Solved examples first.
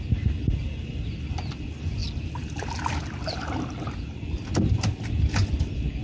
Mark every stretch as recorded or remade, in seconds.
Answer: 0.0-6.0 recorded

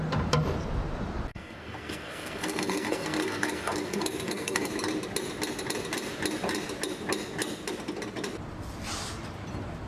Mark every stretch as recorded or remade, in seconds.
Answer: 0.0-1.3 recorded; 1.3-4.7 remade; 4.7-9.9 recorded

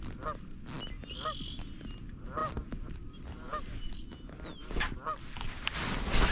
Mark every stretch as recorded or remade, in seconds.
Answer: 0.0-6.3 recorded

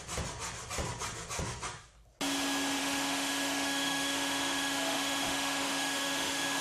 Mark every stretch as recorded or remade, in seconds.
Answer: 0.0-2.8 recorded; 2.8-6.6 remade